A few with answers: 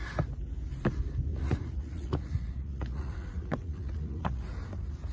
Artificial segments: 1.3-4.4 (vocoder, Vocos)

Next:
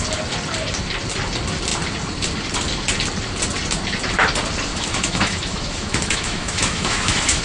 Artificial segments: 4.7-7.4 (autoencoder, DAC-VAE)